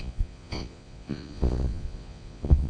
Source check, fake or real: fake